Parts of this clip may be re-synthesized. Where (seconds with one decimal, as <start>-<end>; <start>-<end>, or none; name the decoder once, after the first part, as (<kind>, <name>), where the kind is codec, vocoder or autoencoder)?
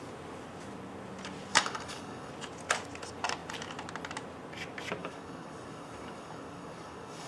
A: 1.5-2.3 (codec, DAC); 5.0-7.3